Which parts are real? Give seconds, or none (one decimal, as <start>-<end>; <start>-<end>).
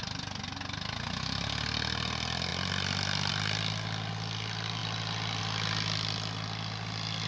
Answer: 0.0-7.3